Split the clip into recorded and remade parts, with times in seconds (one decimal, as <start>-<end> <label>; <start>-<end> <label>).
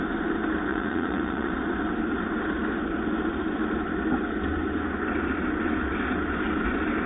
0.0-0.7 recorded; 0.7-1.5 remade; 1.5-7.1 recorded